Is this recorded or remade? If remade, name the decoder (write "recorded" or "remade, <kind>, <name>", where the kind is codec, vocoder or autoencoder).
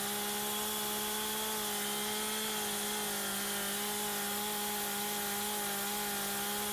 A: recorded